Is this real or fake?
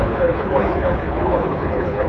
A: fake